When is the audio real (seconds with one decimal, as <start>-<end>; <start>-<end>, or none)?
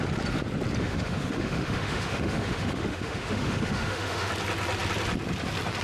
0.0-0.8; 4.3-5.8